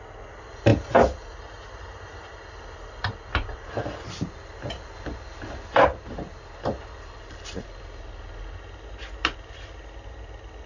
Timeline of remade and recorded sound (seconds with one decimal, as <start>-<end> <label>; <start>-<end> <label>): 0.0-3.5 recorded; 3.5-7.9 remade; 7.9-10.7 recorded